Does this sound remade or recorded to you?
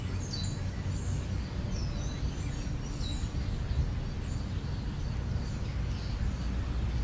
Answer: recorded